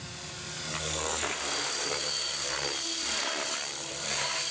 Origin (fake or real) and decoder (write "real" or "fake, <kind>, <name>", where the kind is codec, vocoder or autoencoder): fake, vocoder, BigVGAN v2